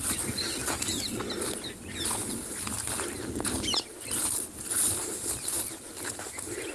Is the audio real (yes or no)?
yes